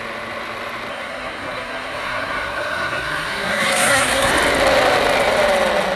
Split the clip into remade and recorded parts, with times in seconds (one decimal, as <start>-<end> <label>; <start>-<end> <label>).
0.0-0.9 recorded; 0.9-4.3 remade; 4.3-6.0 recorded